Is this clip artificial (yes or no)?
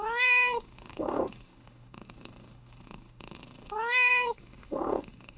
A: yes